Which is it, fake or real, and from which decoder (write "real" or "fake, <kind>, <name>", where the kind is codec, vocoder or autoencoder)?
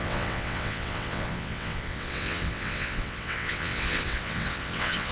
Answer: fake, vocoder, WaveNeXt